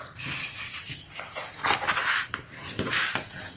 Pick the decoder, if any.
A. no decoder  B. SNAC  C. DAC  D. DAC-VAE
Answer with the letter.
A